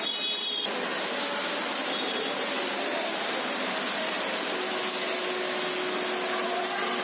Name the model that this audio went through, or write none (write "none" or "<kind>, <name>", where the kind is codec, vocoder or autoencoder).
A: none